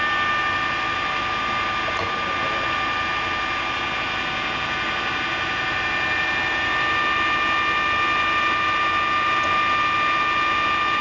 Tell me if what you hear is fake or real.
real